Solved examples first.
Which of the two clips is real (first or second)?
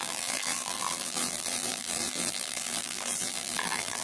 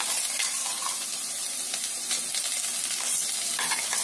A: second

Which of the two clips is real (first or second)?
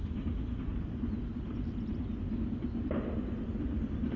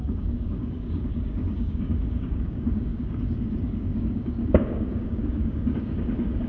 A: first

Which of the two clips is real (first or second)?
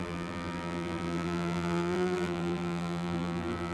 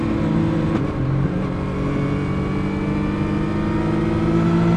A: second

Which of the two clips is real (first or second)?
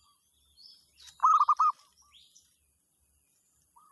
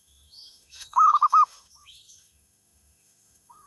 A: first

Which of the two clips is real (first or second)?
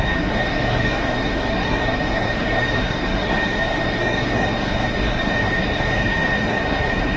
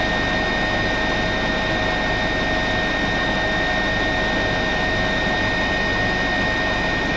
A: second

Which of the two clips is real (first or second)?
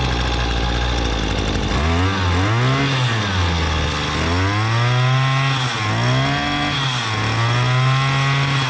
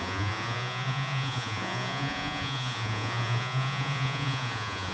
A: first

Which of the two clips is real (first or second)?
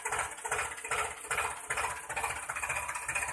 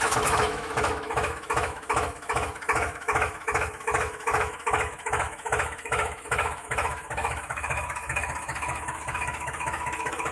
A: first